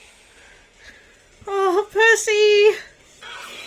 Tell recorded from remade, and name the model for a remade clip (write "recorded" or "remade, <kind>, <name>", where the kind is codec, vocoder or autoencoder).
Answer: recorded